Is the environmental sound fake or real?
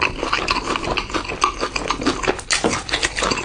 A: real